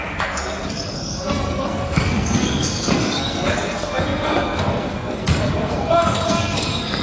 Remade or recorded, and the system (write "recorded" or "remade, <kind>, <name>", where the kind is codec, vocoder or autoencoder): remade, codec, SNAC